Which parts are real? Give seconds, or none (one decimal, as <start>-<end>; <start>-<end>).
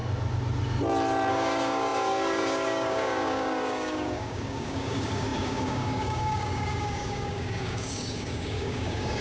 0.0-1.3